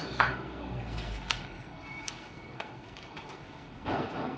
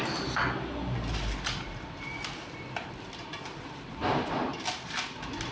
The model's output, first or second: first